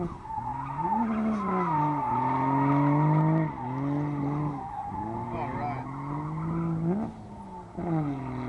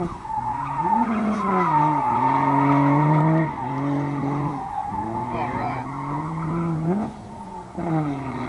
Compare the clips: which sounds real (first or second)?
first